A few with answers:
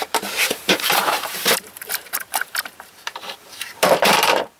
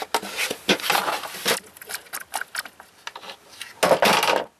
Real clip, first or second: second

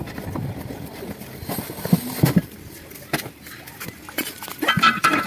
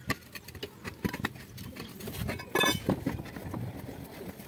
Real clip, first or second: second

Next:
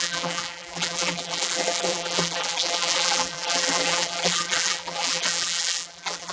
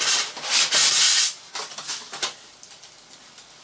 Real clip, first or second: second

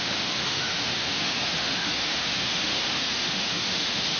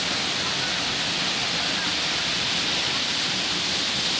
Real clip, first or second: second